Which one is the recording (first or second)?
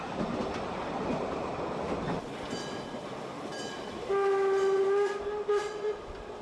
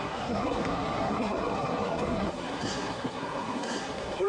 first